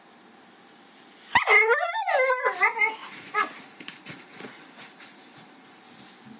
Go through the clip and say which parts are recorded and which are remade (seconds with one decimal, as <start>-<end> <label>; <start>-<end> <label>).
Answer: 0.0-3.0 recorded; 3.0-5.8 remade; 5.8-6.4 recorded